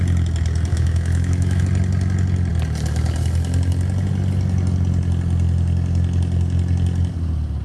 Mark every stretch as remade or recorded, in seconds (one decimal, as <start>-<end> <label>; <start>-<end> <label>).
0.0-0.7 recorded; 0.7-1.6 remade; 1.6-7.6 recorded